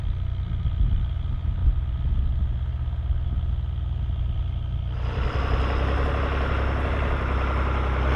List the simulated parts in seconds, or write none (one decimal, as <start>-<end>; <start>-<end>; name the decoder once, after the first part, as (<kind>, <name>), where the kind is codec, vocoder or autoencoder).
none